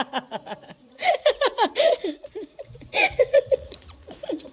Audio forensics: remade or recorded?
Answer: remade